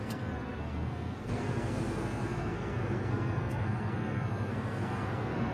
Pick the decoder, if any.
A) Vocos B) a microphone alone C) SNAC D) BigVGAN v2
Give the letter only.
C